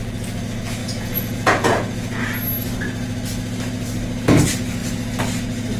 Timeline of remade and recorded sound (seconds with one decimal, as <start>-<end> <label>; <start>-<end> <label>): 0.0-0.8 recorded; 0.8-2.2 remade; 2.2-5.8 recorded

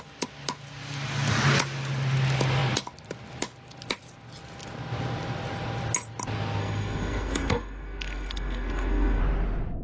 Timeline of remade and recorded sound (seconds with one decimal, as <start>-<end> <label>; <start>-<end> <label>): 0.0-6.6 recorded; 6.6-9.2 remade; 9.2-9.8 recorded

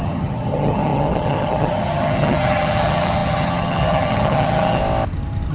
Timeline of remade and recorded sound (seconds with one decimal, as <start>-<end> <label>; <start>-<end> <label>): 0.0-4.8 remade; 4.8-5.5 recorded